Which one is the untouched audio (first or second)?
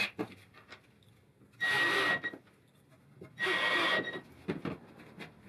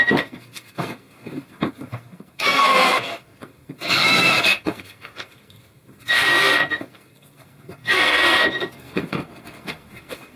first